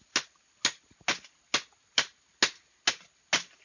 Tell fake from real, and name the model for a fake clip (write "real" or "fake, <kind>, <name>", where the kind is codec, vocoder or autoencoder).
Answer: real